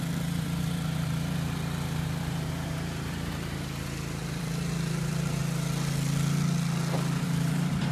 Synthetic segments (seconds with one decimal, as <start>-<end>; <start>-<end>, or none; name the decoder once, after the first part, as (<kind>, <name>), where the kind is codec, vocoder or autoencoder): 0.0-5.4 (vocoder, BigVGAN v2); 7.2-7.9